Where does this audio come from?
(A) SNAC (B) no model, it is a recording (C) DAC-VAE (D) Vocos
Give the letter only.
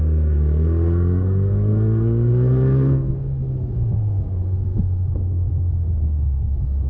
A